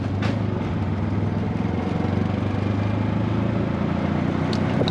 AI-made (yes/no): no